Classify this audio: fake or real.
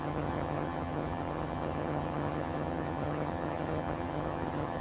fake